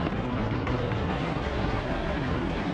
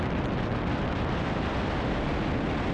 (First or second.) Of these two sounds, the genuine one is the second